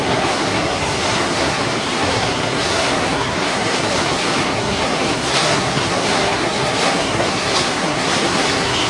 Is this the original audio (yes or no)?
no